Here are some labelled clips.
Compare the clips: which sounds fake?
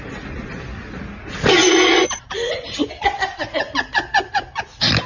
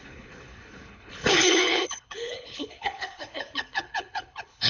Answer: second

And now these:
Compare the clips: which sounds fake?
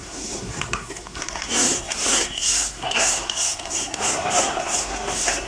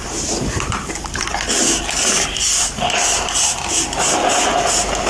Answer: first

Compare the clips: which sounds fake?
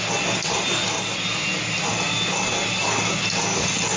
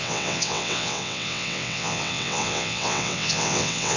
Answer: second